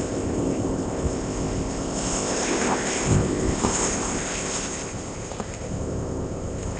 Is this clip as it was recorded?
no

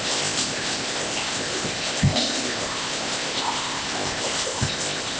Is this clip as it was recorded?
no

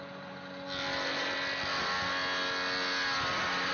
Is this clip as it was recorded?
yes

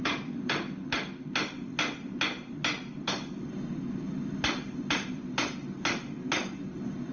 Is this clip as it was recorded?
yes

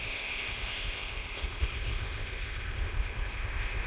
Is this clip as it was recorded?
no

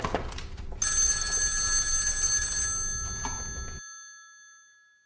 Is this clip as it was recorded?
yes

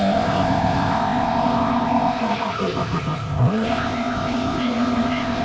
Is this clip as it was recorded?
no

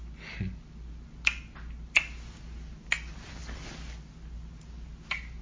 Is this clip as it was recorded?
yes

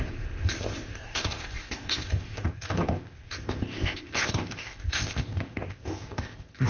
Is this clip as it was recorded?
no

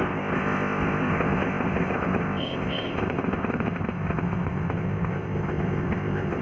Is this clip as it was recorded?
no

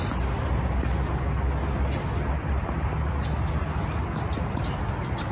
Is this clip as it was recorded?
yes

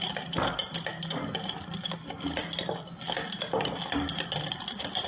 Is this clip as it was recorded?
yes